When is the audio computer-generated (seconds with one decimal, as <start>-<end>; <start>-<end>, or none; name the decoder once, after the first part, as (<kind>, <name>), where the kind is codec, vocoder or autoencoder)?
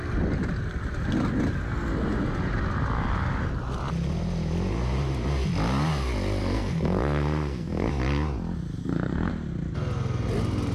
6.4-7.9 (codec, SNAC); 8.8-9.3